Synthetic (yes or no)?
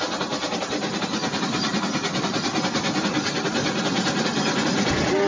no